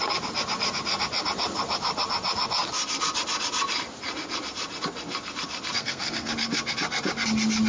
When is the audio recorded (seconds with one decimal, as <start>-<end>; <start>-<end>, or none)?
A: 0.0-5.8; 6.3-7.7